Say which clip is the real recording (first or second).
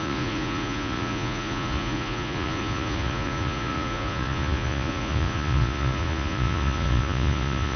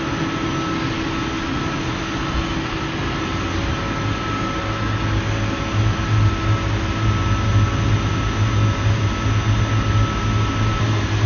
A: second